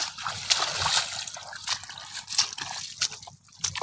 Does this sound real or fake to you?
real